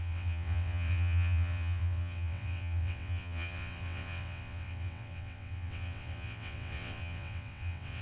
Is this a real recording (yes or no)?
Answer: no